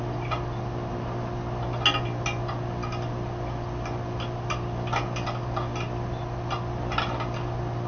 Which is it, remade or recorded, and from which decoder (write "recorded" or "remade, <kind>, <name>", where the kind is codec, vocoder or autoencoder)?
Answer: recorded